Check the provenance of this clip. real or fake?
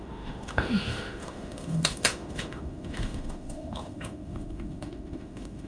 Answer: fake